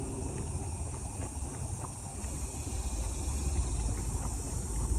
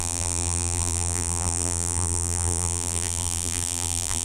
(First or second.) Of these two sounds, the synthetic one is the second